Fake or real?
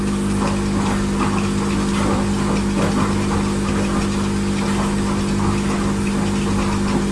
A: real